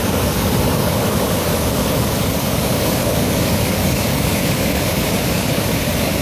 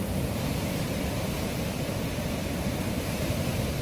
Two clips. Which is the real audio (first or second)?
second